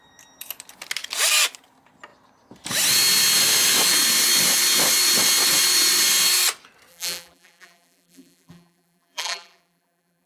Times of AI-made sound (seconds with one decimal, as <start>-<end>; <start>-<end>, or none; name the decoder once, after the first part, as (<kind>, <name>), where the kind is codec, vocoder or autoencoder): 6.9-10.3 (vocoder, BigVGAN v2)